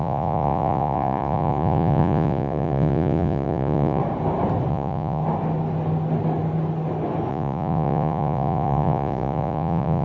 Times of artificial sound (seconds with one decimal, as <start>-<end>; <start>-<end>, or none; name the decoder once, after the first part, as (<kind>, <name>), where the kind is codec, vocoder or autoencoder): 0.0-4.0 (vocoder, Vocos); 4.7-5.2; 7.3-10.0